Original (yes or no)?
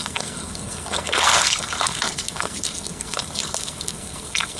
no